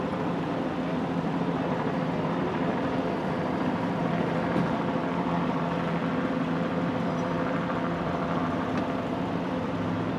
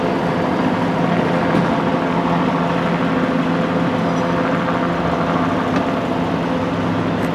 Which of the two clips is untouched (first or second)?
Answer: second